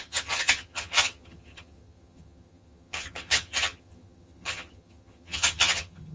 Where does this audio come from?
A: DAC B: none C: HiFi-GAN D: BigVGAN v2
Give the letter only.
C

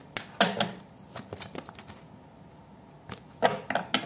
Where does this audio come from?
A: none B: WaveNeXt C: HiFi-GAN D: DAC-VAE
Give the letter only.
A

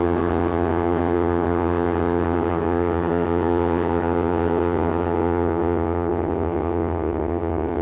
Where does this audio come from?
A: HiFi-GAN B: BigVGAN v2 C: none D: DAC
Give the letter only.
A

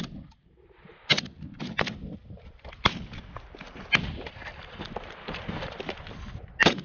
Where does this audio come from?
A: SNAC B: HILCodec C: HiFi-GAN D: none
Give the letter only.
D